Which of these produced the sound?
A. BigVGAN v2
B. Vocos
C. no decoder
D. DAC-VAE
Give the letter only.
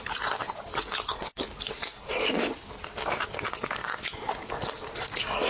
C